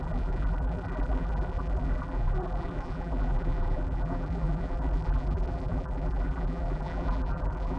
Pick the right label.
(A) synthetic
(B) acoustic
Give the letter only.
A